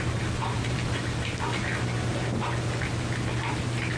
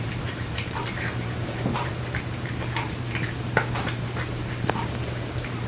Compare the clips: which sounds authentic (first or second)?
first